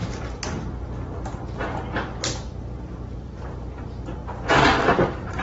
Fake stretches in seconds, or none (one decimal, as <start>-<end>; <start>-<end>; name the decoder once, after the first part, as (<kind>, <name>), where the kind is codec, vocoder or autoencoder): 3.2-4.2 (vocoder, BigVGAN v2); 4.8-5.4